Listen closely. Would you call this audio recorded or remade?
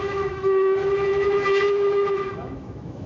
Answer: remade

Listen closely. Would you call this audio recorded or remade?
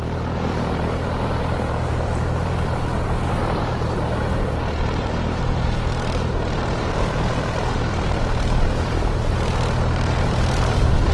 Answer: remade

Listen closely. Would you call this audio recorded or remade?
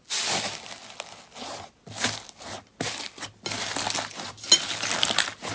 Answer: recorded